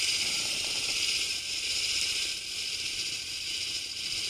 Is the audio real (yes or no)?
no